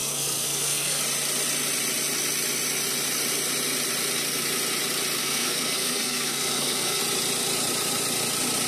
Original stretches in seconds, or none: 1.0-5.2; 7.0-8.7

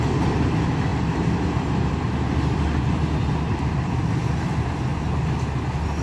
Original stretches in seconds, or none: 0.0-0.9; 4.5-6.0